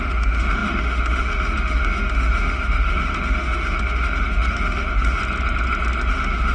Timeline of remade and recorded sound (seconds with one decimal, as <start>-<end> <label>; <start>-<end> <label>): 0.0-5.2 remade; 5.2-6.1 recorded; 6.1-6.5 remade